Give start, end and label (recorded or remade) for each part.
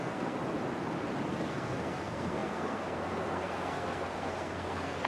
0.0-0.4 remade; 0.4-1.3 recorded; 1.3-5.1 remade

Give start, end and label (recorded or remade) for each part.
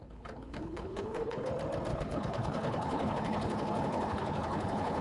0.0-1.5 remade; 1.5-1.9 recorded; 1.9-5.0 remade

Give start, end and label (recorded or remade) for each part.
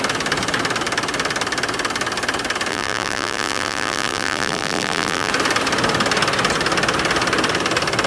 0.0-2.7 recorded; 2.7-5.3 remade; 5.3-8.1 recorded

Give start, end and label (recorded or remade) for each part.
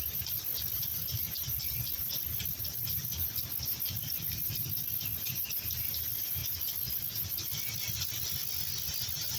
0.0-9.4 recorded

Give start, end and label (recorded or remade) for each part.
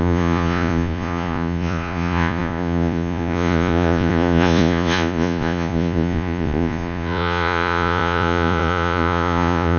0.0-9.8 remade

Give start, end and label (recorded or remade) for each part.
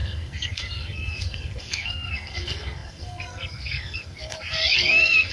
0.0-5.3 remade